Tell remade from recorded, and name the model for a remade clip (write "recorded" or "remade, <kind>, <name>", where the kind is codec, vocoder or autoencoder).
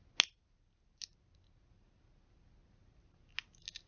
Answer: recorded